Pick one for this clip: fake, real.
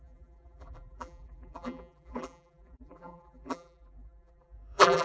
fake